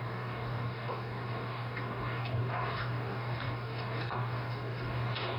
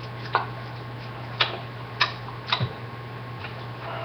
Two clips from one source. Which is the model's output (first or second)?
first